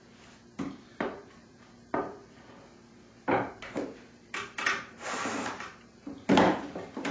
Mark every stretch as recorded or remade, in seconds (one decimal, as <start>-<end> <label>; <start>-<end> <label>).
0.0-7.1 remade